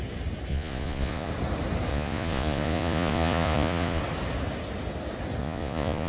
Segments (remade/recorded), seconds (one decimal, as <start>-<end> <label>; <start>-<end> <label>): 0.0-0.5 recorded; 0.5-1.3 remade; 1.3-1.9 recorded; 1.9-4.0 remade; 4.0-5.4 recorded; 5.4-6.1 remade